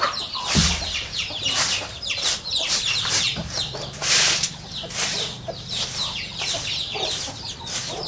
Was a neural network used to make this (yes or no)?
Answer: yes